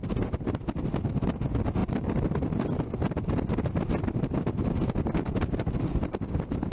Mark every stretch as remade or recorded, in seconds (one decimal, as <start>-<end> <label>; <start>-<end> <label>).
0.0-6.7 recorded